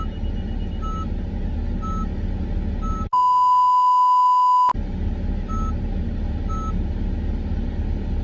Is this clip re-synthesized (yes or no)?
no